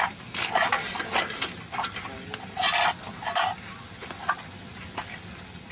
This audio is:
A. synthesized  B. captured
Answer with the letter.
B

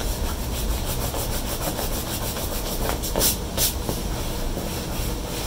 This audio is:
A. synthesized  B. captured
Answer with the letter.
B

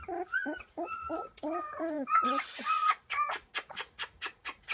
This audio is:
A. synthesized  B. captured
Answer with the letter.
A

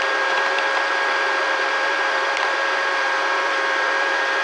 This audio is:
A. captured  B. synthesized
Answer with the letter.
B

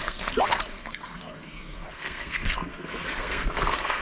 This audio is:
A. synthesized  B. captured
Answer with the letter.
A